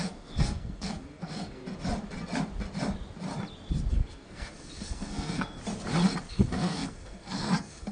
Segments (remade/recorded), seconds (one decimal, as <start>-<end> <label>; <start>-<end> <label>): 0.0-1.6 remade; 1.6-3.9 recorded; 3.9-5.6 remade; 5.6-6.3 recorded; 6.3-7.9 remade